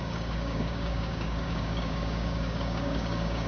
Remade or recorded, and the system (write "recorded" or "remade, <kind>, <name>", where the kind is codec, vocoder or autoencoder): remade, codec, DAC